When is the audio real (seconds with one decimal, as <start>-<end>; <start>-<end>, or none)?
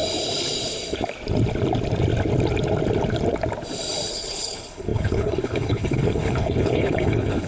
0.0-4.1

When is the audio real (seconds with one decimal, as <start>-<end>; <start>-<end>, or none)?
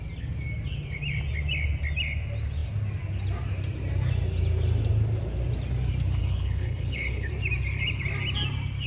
0.0-6.2; 7.3-8.9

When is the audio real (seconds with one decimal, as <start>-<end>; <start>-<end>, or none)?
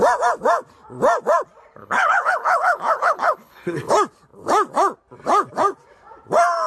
0.0-1.8; 3.9-6.7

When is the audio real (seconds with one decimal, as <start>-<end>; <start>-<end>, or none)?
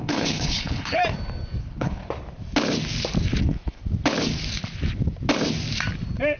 1.0-1.6; 2.0-3.4; 3.8-6.4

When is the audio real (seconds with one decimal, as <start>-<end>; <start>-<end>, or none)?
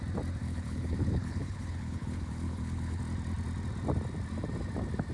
0.0-0.4; 3.0-5.1